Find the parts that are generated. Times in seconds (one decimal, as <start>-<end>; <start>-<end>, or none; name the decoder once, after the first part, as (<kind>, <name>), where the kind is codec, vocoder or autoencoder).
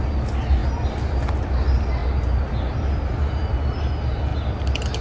none